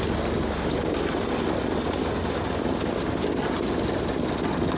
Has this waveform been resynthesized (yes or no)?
no